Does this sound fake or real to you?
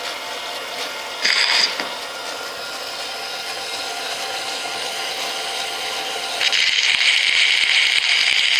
real